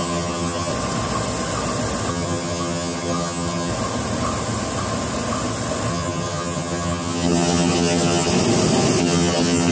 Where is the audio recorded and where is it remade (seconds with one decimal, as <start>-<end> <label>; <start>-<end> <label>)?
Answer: 0.0-0.7 remade; 0.7-2.1 recorded; 2.1-3.7 remade; 3.7-5.9 recorded; 5.9-8.3 remade; 8.3-9.0 recorded; 9.0-9.7 remade